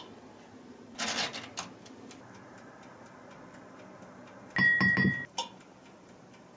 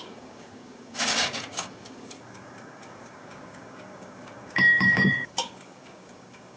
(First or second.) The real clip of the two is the first